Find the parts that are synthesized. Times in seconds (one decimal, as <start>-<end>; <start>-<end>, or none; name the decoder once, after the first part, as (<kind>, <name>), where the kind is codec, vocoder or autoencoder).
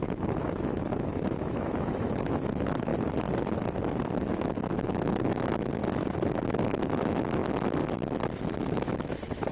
0.0-2.9 (autoencoder, DAC-VAE); 4.2-5.8; 6.5-7.4; 8.6-9.5